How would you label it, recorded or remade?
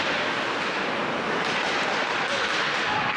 remade